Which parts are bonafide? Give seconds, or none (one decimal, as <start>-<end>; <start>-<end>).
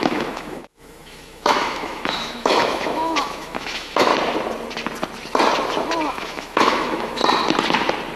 4.1-6.1; 7.2-8.2